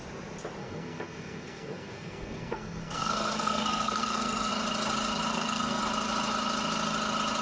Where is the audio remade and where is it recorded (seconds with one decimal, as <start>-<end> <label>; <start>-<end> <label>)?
0.0-0.6 recorded; 0.6-4.5 remade; 4.5-5.3 recorded; 5.3-5.8 remade; 5.8-7.4 recorded